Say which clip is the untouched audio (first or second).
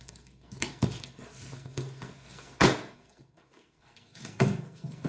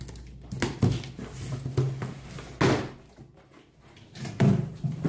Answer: second